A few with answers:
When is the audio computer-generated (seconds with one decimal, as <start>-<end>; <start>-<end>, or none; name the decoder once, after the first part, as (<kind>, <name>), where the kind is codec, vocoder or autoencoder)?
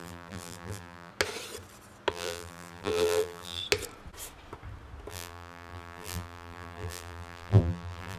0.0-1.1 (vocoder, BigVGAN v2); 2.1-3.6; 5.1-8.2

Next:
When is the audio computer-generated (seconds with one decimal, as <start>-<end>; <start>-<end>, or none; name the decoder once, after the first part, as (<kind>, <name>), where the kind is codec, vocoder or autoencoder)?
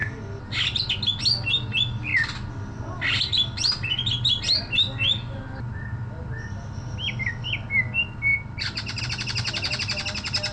8.3-9.0 (vocoder, BigVGAN v2)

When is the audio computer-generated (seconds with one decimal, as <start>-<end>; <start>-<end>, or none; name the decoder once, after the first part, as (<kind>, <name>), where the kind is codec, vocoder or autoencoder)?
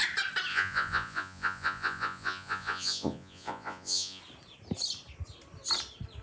0.5-4.2 (vocoder, Vocos)